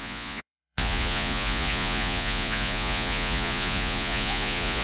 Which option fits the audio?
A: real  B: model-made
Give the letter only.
B